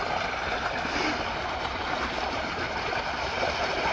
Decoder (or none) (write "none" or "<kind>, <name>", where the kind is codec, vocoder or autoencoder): vocoder, BigVGAN v2